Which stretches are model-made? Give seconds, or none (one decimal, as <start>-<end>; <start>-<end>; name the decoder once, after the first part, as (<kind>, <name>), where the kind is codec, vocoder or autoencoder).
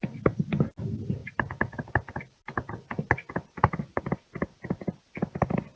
1.2-4.7 (vocoder, BigVGAN v2)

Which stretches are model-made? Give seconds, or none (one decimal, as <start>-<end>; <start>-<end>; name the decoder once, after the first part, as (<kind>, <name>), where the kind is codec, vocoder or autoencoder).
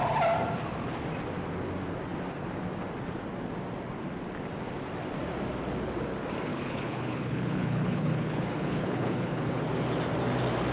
6.5-9.5 (codec, HILCodec)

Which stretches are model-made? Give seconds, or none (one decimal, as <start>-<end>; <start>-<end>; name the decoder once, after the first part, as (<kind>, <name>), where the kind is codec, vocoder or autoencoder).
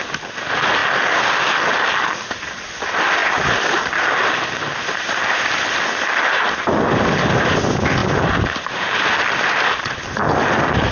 none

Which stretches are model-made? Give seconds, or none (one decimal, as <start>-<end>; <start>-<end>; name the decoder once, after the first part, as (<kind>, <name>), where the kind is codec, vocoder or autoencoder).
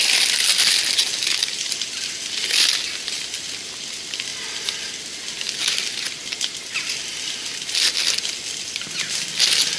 none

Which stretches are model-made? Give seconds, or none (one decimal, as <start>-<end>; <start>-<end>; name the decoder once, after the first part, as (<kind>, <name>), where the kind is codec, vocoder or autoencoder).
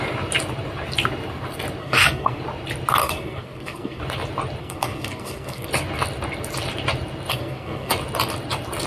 1.8-2.4 (codec, SNAC); 3.0-4.0; 4.6-5.7; 7.3-7.9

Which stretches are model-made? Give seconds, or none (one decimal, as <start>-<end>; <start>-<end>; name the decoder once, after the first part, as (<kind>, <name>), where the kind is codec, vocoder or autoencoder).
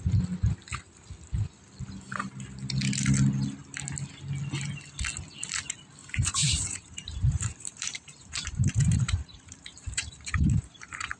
6.0-11.2 (vocoder, BigVGAN v2)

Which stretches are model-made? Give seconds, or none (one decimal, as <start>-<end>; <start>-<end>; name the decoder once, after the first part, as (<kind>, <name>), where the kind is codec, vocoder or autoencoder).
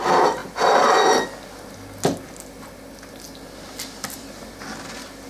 none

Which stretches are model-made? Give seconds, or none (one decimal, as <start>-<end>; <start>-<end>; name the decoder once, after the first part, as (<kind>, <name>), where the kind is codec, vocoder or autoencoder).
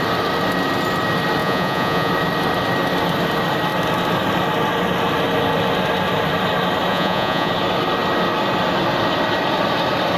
1.4-2.1 (vocoder, Vocos); 6.9-7.5